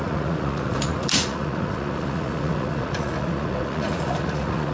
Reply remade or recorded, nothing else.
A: remade